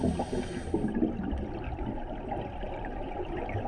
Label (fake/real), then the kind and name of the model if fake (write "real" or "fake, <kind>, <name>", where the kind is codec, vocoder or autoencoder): real